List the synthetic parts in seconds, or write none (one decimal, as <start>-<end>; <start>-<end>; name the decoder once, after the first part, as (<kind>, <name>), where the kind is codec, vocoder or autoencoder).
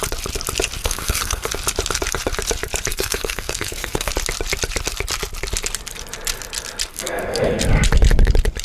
0.8-1.5 (codec, SNAC); 2.9-4.1; 6.9-7.6